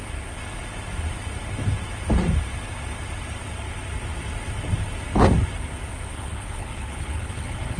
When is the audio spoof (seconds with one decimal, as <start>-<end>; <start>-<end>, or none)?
6.1-7.8